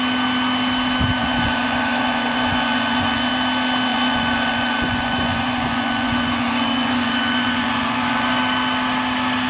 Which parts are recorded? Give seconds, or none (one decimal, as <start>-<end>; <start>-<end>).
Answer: 0.0-1.2; 3.3-3.9; 8.4-9.5